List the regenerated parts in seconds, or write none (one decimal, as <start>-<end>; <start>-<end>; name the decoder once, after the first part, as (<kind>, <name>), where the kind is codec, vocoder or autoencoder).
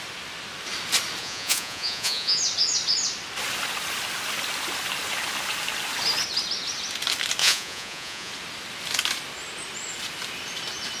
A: 1.2-2.4 (vocoder, Vocos); 7.4-8.3